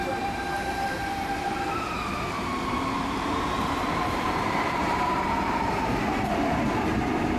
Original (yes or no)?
no